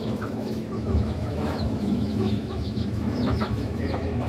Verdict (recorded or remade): remade